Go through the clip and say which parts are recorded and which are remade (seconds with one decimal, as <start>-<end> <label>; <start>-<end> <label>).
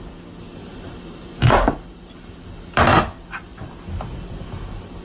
0.0-0.6 recorded; 0.6-2.8 remade; 2.8-5.0 recorded